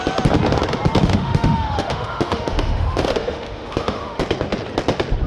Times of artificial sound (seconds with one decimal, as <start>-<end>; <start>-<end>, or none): 1.0-4.2